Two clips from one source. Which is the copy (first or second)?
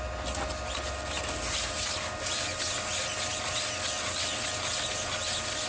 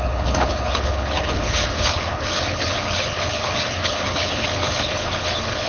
second